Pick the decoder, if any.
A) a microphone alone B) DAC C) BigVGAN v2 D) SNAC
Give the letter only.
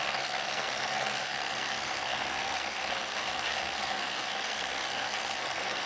D